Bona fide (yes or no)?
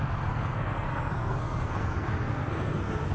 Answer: no